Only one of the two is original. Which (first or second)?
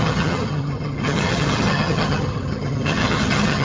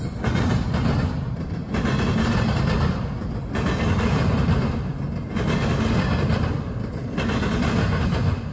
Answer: second